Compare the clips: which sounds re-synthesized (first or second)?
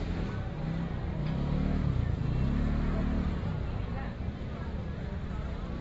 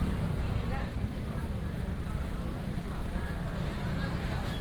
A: second